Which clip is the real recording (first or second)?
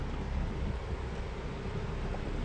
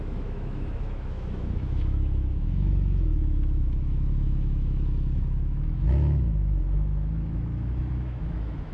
first